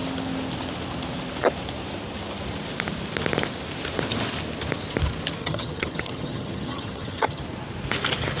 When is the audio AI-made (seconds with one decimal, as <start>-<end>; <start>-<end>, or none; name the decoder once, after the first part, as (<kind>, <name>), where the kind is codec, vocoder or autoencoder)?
5.4-7.4 (vocoder, HiFi-GAN)

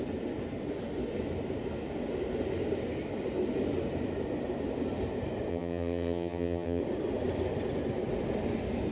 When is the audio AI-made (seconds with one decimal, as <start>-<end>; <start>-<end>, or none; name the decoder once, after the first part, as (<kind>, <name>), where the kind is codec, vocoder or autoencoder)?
5.5-6.8 (vocoder, HiFi-GAN)

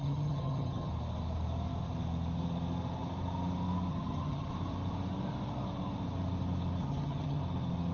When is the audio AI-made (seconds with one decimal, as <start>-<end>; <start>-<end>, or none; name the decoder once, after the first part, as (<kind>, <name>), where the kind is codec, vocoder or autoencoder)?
0.0-0.9 (vocoder, HiFi-GAN); 3.9-4.5; 6.8-7.4

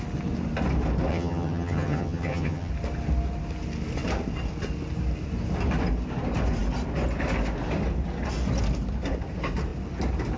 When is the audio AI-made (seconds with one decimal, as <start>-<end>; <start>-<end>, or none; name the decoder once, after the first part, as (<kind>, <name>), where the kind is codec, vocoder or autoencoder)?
1.1-2.7 (vocoder, HiFi-GAN)

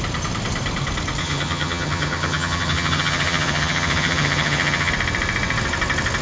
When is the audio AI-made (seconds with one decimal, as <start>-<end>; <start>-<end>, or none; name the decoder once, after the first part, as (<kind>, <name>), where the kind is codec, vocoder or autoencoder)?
1.2-4.9 (vocoder, HiFi-GAN)

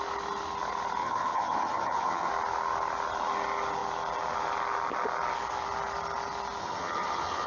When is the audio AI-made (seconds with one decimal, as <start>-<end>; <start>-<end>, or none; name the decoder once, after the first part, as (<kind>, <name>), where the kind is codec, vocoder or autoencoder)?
1.0-2.3 (vocoder, HiFi-GAN); 6.6-7.5

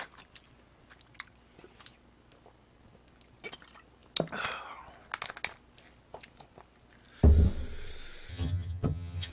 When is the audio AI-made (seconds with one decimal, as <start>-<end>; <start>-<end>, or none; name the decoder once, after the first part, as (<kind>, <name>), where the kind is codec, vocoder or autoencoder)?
8.3-9.3 (vocoder, HiFi-GAN)

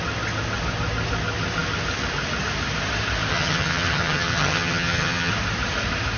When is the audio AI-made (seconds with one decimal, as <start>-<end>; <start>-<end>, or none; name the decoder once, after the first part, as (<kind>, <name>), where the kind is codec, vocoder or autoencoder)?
3.3-5.3 (vocoder, HiFi-GAN)